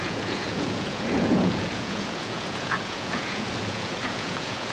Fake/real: fake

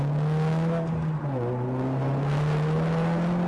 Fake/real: real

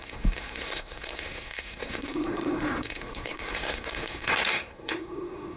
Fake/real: fake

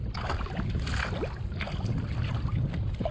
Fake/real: real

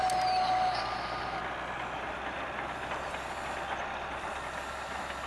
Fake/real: real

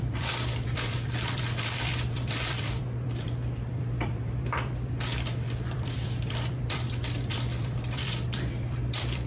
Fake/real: fake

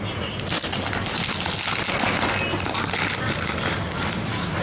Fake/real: real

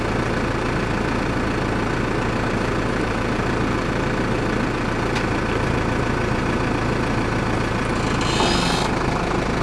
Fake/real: real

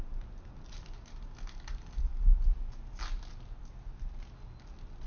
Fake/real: real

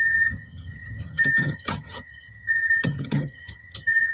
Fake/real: fake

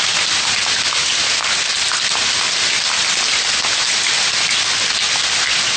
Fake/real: real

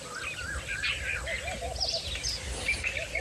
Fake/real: real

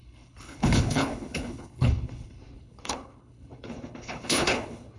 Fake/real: fake